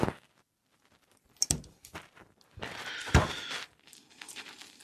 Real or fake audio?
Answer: real